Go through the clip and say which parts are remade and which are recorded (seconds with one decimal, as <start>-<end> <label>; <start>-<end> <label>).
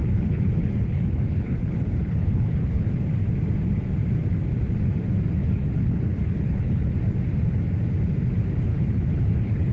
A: 0.0-2.9 remade; 2.9-5.4 recorded; 5.4-6.9 remade; 6.9-8.7 recorded; 8.7-9.7 remade